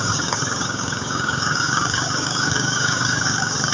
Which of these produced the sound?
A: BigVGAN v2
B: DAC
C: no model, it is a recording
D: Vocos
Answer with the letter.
B